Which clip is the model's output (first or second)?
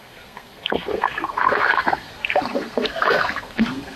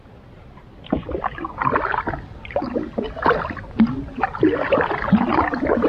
first